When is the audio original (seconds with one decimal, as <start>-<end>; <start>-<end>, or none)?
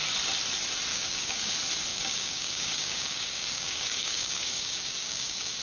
0.0-0.9; 1.5-1.9